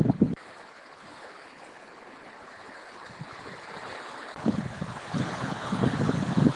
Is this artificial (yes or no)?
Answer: yes